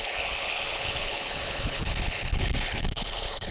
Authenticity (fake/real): fake